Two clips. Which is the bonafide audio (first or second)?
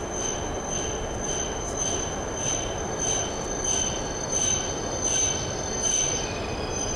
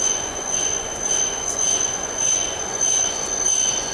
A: first